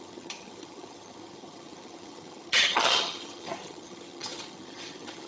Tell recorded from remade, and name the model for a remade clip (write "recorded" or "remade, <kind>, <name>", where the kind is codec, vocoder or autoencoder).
remade, vocoder, HiFi-GAN